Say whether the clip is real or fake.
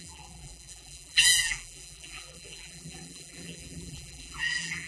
fake